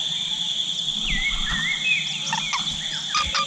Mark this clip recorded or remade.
recorded